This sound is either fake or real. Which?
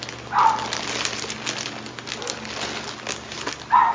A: real